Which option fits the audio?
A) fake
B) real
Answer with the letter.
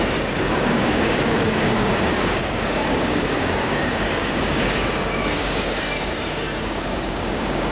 A